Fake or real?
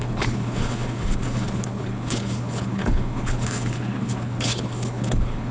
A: fake